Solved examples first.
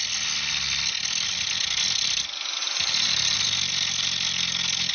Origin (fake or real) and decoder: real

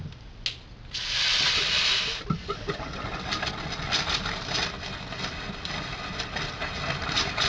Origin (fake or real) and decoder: real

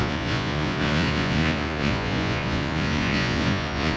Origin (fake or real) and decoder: fake, vocoder, Vocos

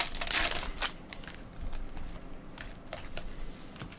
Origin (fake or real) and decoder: real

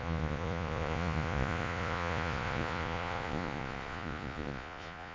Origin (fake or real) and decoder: fake, vocoder, Vocos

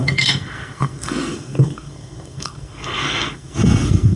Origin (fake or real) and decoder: fake, codec, SNAC